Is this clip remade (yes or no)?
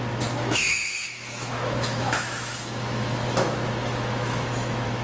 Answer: yes